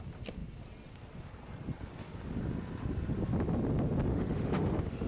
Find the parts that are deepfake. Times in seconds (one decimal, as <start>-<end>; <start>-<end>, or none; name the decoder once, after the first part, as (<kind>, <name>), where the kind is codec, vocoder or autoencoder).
4.1-5.1 (autoencoder, DAC-VAE)